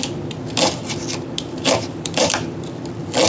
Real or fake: real